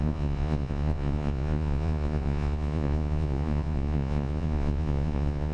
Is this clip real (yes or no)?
no